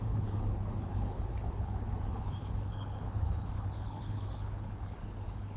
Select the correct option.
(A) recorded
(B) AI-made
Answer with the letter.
B